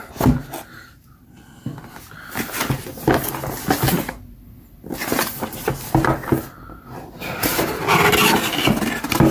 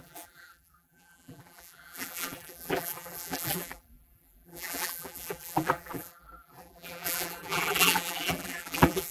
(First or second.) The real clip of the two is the first